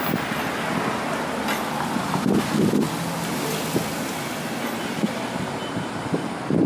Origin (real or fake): real